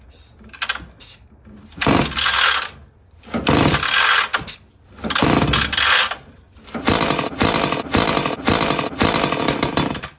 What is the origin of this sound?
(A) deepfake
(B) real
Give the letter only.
B